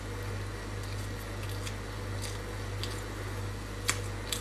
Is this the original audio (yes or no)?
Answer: yes